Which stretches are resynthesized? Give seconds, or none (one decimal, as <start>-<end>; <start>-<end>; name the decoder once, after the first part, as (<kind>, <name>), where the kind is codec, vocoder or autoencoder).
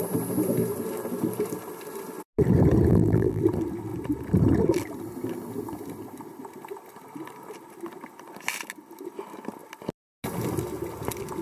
2.9-3.4 (vocoder, BigVGAN v2)